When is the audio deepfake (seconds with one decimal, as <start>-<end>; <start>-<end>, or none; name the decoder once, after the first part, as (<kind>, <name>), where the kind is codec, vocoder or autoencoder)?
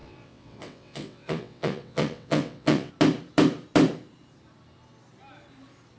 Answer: 0.0-2.9 (vocoder, WaveNeXt)